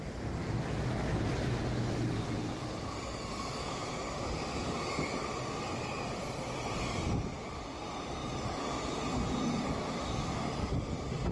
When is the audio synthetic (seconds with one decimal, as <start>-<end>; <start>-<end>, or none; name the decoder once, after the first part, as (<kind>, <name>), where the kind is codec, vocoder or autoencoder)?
0.4-1.1 (autoencoder, DAC-VAE)